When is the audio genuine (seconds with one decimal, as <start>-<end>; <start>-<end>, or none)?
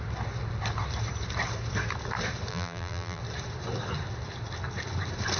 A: 0.0-2.5; 3.2-5.4